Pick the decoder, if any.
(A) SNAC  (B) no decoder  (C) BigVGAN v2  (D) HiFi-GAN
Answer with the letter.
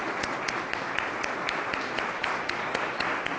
B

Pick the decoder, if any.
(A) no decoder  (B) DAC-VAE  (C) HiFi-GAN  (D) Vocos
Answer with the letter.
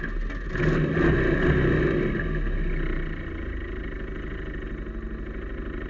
A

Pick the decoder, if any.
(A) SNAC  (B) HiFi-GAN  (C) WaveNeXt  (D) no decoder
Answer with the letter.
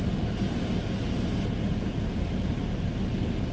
D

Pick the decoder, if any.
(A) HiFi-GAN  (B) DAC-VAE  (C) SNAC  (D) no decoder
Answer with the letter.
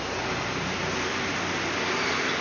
D